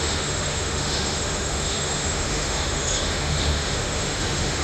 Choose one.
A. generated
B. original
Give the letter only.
A